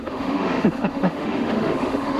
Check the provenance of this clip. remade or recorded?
remade